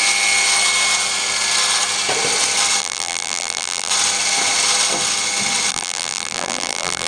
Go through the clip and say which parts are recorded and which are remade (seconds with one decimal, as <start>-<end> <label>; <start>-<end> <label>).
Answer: 0.0-2.8 recorded; 2.8-3.9 remade; 3.9-5.7 recorded; 5.7-7.1 remade